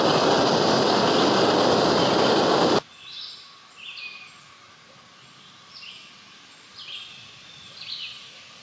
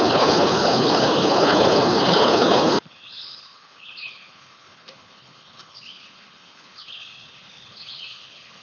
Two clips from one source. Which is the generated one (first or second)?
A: second